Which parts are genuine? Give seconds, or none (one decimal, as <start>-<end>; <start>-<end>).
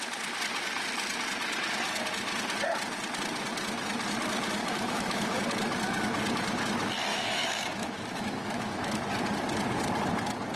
0.0-4.6; 5.4-7.1; 9.0-10.6